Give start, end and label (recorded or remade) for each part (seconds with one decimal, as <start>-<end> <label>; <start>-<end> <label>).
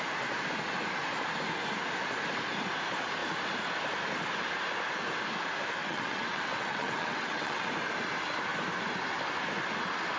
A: 0.0-5.8 recorded; 5.8-7.7 remade; 7.7-10.2 recorded